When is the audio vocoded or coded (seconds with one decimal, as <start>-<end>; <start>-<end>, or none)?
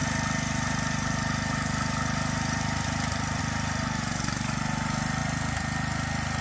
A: 0.0-5.2